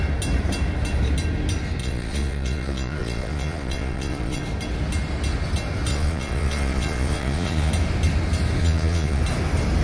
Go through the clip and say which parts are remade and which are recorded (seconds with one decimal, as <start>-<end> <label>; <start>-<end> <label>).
0.0-1.8 recorded; 1.8-4.4 remade; 4.4-5.9 recorded; 5.9-7.7 remade; 7.7-8.6 recorded; 8.6-9.2 remade; 9.2-9.8 recorded